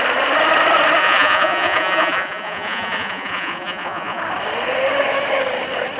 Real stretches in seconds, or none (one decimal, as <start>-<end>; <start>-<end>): 0.0-1.0; 4.2-6.0